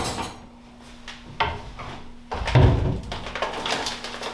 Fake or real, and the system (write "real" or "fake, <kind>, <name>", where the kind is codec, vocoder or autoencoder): real